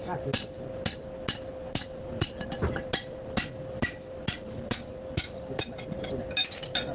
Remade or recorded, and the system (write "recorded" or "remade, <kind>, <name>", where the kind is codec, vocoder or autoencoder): recorded